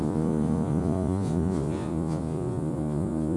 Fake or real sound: fake